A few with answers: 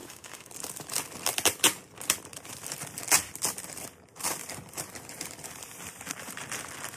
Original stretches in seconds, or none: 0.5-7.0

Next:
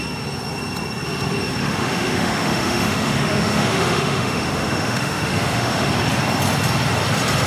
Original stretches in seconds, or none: 0.0-1.6; 5.9-7.5

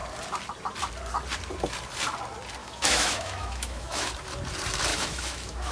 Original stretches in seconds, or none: 0.0-2.6; 4.1-4.9

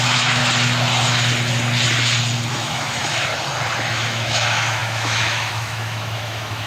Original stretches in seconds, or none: 0.4-2.5; 3.3-3.9

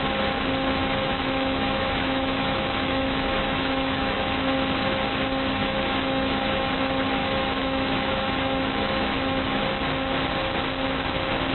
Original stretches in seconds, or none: 0.0-0.8; 4.3-5.6; 6.7-7.2; 9.6-11.5

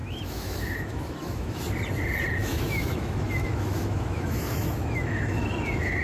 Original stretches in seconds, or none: 1.6-2.4

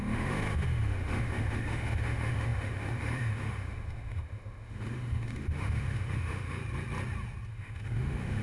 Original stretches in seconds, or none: 6.6-7.5

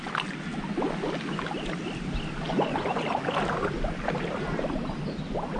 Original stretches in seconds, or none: 0.0-5.6